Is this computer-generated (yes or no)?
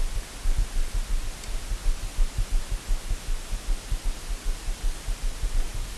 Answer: no